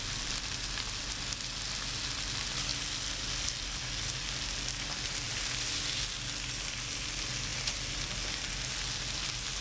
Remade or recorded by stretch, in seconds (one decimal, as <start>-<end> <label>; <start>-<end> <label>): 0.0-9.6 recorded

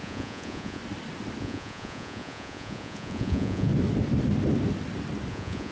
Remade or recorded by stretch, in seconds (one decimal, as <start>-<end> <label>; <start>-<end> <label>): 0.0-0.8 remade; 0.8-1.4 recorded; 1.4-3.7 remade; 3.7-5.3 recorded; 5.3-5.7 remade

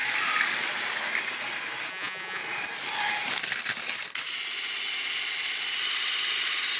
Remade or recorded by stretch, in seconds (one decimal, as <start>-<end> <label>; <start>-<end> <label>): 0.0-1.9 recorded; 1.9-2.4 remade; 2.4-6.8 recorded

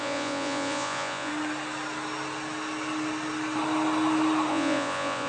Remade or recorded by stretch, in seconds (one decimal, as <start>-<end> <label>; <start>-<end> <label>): 0.0-1.3 remade; 1.3-4.5 recorded; 4.5-5.3 remade

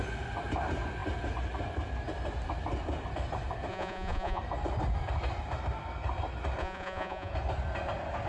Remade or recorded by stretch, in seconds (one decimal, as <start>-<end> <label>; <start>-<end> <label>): 0.0-3.7 recorded; 3.7-4.4 remade; 4.4-6.6 recorded; 6.6-7.3 remade; 7.3-8.3 recorded